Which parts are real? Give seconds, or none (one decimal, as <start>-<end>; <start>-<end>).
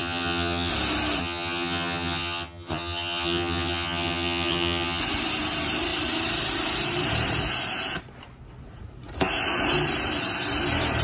0.7-1.2; 5.0-11.0